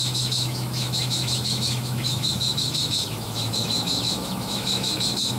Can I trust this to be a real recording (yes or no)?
no